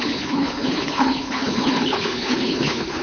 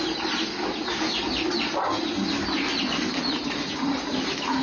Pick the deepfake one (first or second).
first